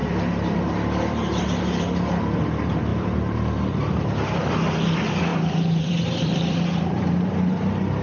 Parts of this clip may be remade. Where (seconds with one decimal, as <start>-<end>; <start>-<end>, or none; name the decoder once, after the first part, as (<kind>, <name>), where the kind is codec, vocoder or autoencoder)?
2.9-3.8 (vocoder, BigVGAN v2); 5.3-8.0